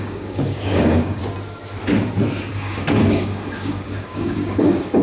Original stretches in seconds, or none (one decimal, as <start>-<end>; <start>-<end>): 1.2-2.5